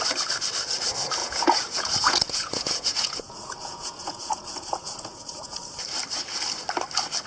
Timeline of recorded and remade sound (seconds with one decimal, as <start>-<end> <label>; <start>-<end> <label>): 0.0-1.2 recorded; 1.2-5.6 remade; 5.6-7.3 recorded